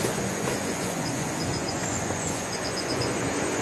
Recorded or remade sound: remade